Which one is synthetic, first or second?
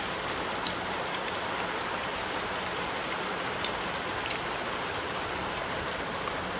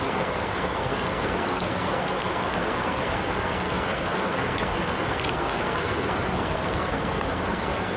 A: second